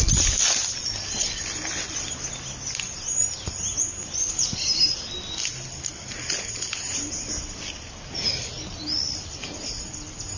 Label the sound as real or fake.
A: real